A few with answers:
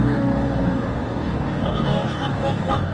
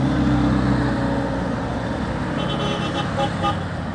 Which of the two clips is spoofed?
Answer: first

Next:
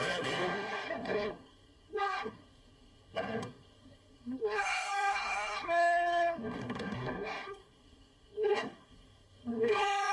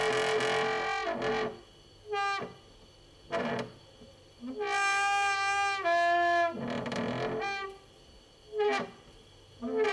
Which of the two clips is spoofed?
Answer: first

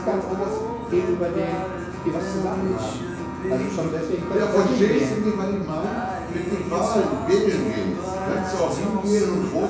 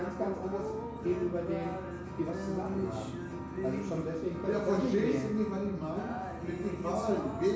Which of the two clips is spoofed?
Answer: first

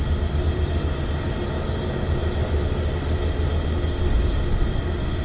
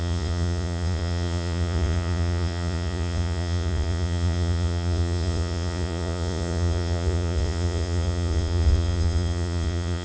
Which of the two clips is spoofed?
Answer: second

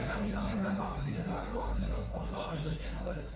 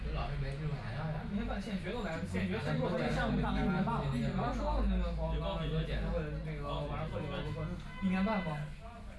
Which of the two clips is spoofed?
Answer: first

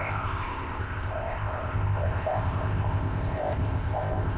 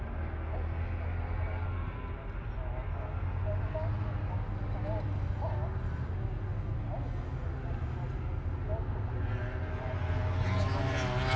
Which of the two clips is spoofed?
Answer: first